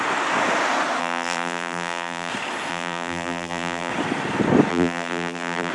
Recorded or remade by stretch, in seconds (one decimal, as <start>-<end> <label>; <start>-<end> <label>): 0.0-1.0 recorded; 1.0-2.3 remade; 2.3-2.7 recorded; 2.7-3.9 remade; 3.9-4.7 recorded; 4.7-5.7 remade